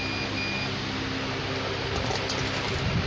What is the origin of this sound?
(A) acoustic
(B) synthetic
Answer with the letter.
A